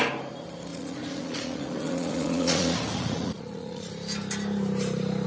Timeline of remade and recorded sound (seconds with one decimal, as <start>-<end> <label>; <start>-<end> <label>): 0.0-0.7 recorded; 0.7-3.9 remade; 3.9-5.3 recorded